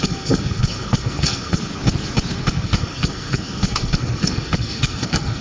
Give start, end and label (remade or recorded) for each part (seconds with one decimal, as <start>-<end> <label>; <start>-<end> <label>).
0.0-1.7 remade; 1.7-2.5 recorded; 2.5-5.4 remade

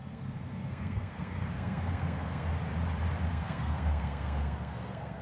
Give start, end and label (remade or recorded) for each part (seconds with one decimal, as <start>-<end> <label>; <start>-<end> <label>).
0.0-2.5 remade; 2.5-3.3 recorded; 3.3-5.2 remade

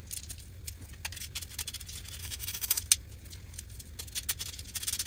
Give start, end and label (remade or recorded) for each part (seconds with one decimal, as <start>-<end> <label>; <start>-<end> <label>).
0.0-2.2 recorded; 2.2-2.8 remade; 2.8-5.1 recorded

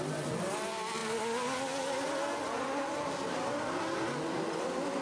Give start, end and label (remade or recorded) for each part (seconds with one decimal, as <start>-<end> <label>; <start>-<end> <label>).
0.0-5.0 recorded

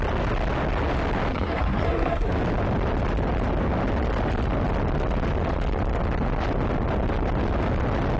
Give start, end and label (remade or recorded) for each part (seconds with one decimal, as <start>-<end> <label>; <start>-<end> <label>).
0.0-1.3 recorded; 1.3-2.3 remade; 2.3-8.2 recorded

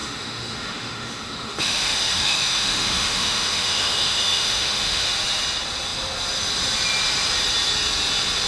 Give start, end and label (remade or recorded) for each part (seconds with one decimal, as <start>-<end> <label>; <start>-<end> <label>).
0.0-5.1 remade; 5.1-8.5 recorded

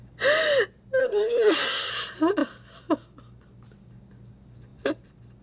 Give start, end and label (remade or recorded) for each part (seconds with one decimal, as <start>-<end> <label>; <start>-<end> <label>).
0.0-1.0 recorded; 1.0-1.9 remade; 1.9-5.4 recorded

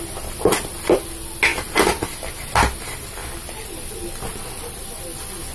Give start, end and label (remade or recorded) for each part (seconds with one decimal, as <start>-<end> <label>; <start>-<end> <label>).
0.0-5.5 recorded